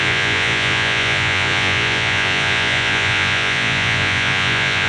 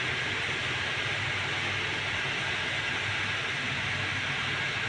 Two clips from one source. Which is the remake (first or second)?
first